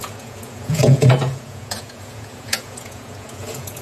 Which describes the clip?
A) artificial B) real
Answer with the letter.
A